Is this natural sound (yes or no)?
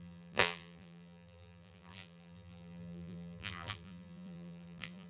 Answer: no